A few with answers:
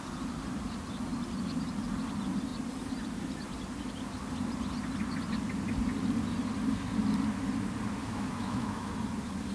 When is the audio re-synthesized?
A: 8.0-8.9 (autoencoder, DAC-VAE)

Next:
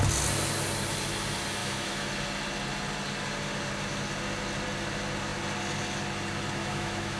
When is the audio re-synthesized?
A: 1.6-2.1 (autoencoder, DAC-VAE); 6.6-7.2